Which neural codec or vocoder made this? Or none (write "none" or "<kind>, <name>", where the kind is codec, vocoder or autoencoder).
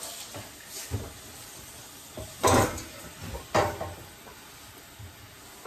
none